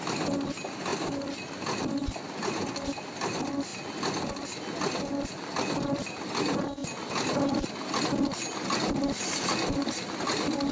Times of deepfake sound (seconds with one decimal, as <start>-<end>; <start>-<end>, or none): none